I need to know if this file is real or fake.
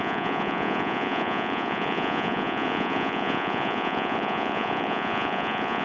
fake